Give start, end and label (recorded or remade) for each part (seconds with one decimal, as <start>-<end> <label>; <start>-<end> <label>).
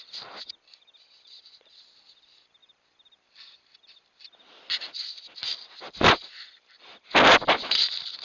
0.0-8.2 recorded